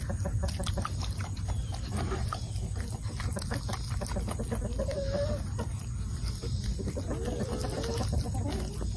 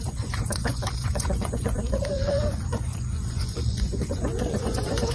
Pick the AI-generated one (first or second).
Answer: second